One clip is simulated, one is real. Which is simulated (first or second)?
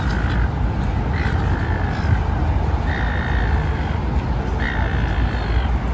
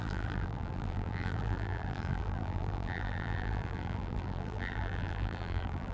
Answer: second